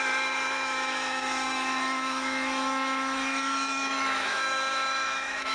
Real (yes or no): no